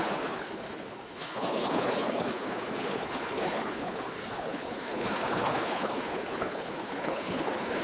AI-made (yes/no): yes